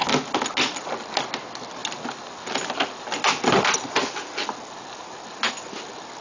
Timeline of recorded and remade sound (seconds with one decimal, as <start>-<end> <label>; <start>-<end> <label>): 0.0-6.2 recorded